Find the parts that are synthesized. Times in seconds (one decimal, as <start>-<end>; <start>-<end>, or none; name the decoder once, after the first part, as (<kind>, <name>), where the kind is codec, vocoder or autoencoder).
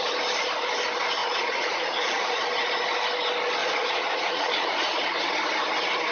1.2-2.4 (vocoder, Vocos); 3.6-5.3